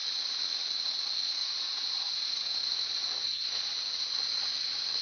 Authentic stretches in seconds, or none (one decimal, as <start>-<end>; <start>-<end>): 0.0-1.4; 4.4-5.0